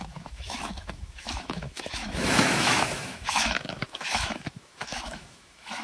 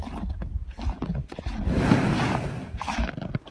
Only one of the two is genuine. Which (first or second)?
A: second